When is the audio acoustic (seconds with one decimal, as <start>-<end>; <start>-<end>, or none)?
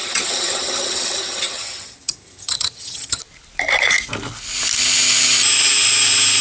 3.2-6.4